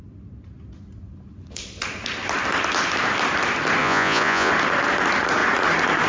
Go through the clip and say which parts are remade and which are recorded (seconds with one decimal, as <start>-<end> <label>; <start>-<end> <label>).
0.0-3.8 recorded; 3.8-4.5 remade; 4.5-6.1 recorded